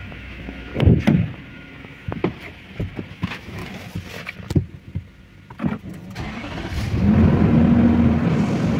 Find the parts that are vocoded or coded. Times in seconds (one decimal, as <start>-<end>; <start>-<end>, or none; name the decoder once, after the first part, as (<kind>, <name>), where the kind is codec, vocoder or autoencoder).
0.0-0.7 (autoencoder, DAC-VAE); 1.5-2.2; 3.1-3.6